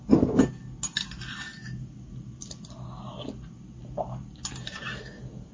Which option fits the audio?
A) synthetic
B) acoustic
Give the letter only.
B